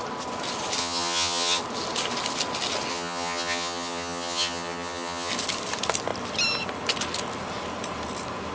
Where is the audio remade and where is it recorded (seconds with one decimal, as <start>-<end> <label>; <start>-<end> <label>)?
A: 0.0-0.8 recorded; 0.8-1.6 remade; 1.6-2.9 recorded; 2.9-5.3 remade; 5.3-8.5 recorded